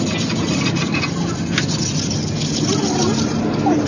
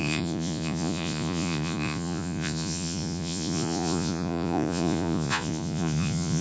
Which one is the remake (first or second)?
second